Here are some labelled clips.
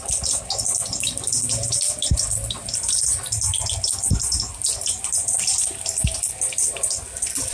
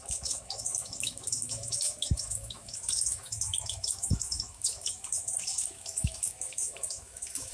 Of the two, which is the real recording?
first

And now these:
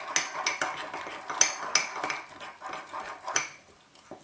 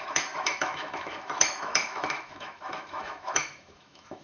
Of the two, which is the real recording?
first